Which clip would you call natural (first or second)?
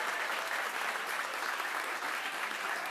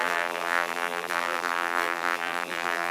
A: first